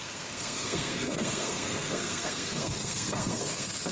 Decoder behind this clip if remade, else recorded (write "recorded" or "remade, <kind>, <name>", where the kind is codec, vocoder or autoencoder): remade, codec, SNAC